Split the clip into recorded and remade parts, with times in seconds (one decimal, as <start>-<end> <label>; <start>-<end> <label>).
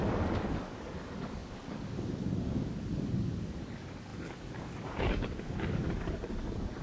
0.0-6.8 remade